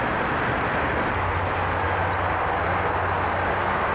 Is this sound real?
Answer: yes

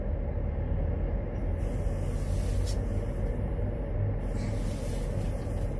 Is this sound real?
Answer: yes